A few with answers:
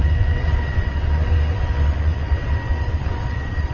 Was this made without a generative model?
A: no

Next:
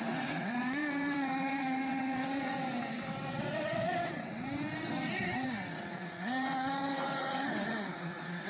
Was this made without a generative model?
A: no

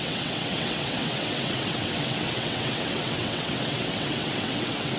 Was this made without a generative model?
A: no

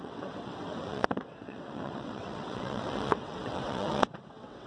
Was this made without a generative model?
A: no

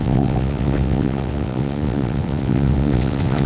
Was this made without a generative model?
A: no